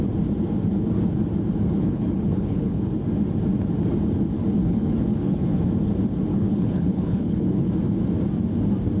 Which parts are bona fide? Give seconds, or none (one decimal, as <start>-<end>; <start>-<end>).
0.0-1.8; 2.9-4.6; 5.6-6.3; 7.7-9.0